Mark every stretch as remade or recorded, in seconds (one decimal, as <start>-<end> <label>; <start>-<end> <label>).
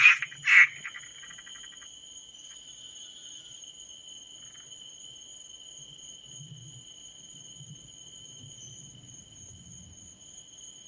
0.0-10.9 recorded